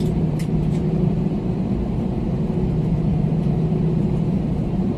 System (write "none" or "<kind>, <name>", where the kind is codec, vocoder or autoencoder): vocoder, BigVGAN v2